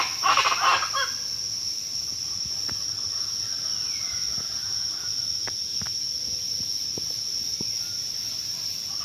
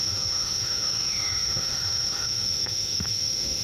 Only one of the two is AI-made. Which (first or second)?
second